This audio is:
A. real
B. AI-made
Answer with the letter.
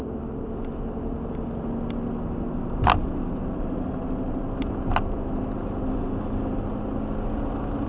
A